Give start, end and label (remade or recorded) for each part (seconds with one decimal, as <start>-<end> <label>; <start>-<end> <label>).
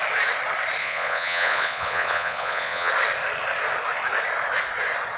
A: 0.0-0.8 recorded; 0.8-2.9 remade; 2.9-5.2 recorded